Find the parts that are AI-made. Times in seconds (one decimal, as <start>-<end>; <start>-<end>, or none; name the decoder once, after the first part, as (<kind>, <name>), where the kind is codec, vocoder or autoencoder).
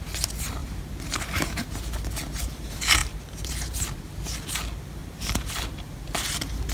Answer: 0.6-1.8 (vocoder, BigVGAN v2); 3.0-4.2; 5.0-5.6